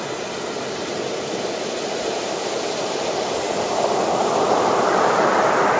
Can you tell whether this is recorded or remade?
recorded